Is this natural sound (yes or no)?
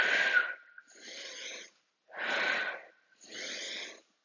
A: yes